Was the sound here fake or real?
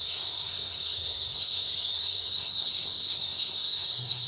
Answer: fake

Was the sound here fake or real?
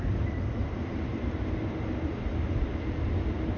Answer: real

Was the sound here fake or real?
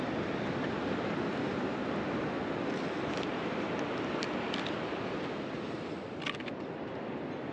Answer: real